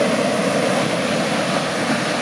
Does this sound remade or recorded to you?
recorded